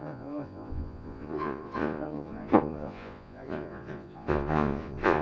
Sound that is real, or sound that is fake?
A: fake